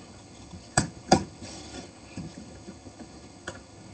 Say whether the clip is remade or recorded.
remade